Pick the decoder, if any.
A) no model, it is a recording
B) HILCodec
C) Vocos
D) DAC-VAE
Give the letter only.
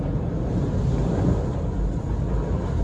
A